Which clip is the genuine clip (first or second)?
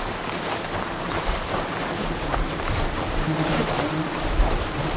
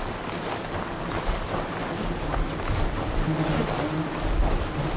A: second